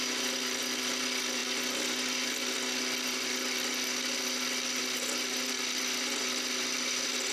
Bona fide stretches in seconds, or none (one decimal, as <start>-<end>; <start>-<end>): 0.0-7.3